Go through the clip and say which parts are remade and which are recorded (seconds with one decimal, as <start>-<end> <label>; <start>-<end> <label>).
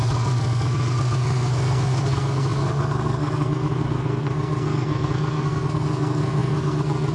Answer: 0.0-7.1 remade